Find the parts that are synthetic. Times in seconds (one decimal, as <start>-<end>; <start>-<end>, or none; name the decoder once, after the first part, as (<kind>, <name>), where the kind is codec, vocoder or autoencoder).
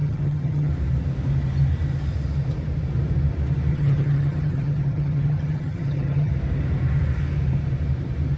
0.0-0.7 (vocoder, HiFi-GAN); 3.7-6.3